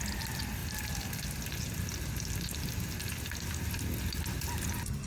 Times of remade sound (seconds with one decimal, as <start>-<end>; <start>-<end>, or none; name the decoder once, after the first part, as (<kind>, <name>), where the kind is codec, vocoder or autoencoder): none